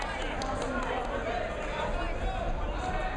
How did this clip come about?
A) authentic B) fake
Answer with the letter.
A